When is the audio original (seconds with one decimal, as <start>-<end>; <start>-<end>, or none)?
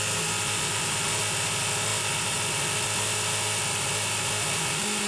0.0-5.1